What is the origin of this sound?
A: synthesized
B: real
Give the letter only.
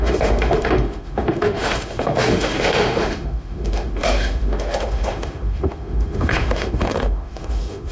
A